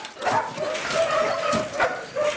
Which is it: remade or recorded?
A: recorded